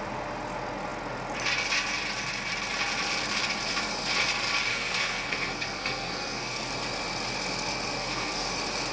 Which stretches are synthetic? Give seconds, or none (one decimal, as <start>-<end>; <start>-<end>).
4.7-6.7; 8.0-8.5